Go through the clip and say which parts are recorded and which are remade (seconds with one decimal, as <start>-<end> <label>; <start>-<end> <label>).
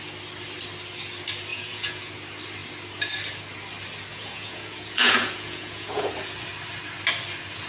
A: 0.0-1.5 recorded; 1.5-2.1 remade; 2.1-4.1 recorded; 4.1-6.1 remade; 6.1-7.7 recorded